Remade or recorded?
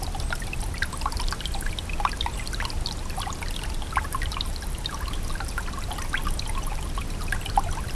recorded